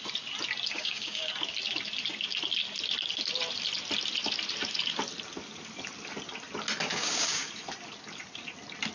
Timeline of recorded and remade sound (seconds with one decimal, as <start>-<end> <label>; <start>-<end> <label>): 0.0-0.7 recorded; 0.7-1.3 remade; 1.3-6.9 recorded; 6.9-7.5 remade; 7.5-8.9 recorded